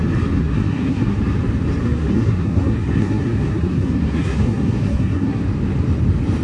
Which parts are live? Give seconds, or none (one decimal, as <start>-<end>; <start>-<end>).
0.0-0.4; 1.2-1.8; 5.4-6.4